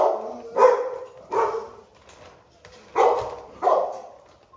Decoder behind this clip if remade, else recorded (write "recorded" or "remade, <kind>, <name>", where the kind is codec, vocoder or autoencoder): recorded